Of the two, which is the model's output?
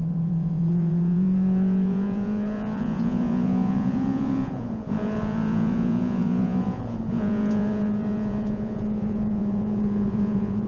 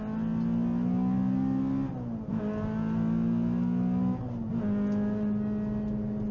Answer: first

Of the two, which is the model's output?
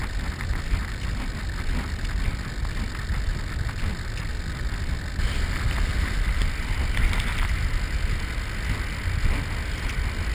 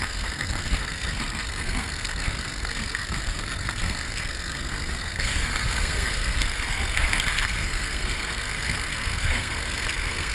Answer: second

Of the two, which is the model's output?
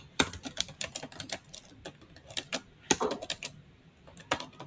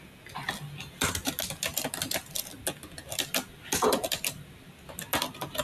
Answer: first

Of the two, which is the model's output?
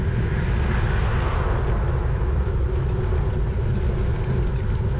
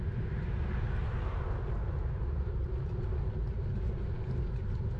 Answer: second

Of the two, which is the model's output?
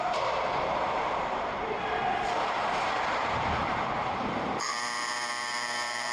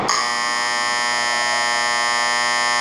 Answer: first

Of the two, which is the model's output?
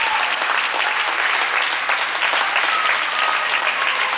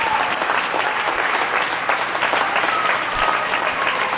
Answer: second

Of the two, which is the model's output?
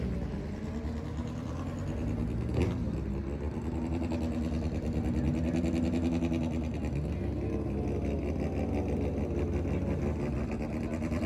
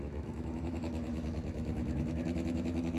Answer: second